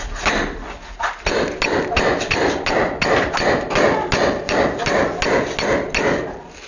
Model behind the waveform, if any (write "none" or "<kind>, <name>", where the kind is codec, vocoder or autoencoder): none